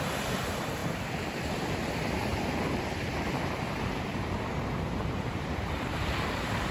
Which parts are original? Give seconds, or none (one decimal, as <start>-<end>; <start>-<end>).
0.0-2.3; 6.3-6.7